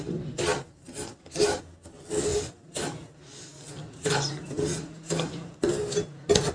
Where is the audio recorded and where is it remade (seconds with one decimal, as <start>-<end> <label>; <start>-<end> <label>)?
0.0-0.5 recorded; 0.5-1.6 remade; 1.6-6.5 recorded